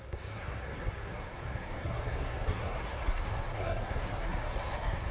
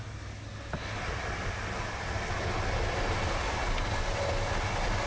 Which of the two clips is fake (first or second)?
first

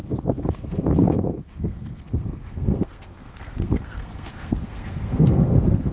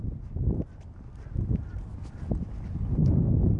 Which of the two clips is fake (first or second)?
first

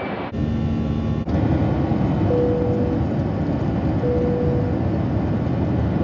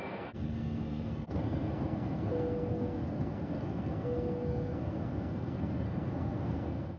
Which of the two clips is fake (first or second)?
second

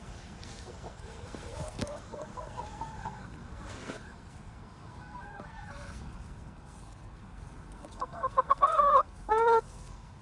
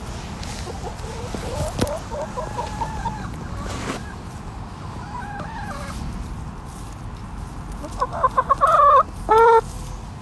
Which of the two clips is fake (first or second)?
first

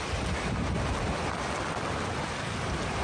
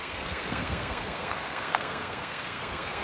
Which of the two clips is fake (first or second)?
second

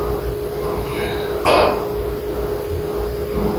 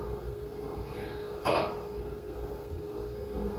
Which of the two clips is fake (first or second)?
second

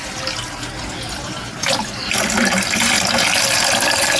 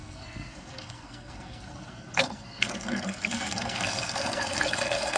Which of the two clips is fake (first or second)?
second